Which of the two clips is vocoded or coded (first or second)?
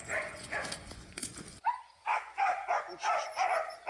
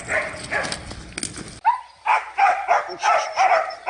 first